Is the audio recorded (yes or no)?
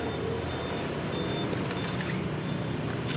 yes